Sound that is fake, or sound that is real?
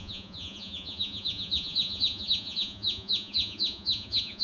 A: fake